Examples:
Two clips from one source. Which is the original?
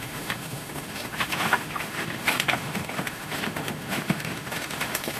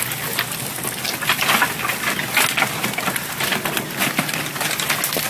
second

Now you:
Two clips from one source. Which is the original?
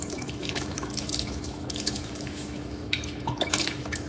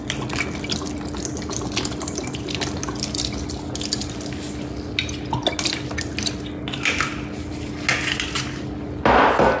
second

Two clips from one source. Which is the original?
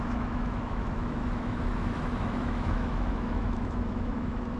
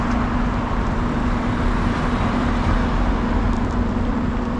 second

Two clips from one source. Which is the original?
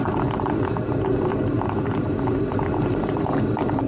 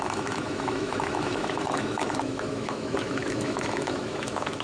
first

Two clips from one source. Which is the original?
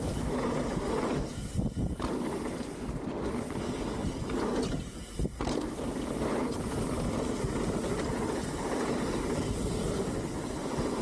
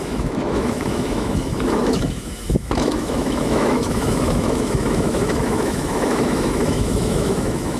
first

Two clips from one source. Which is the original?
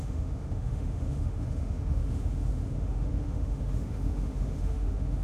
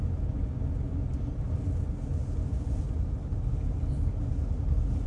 second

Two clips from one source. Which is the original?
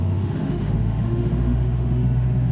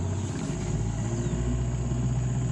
second